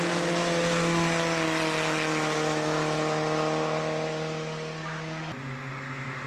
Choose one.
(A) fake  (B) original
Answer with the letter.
B